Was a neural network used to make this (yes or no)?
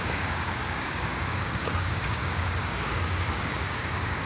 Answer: yes